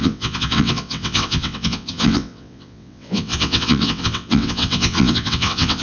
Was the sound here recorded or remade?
remade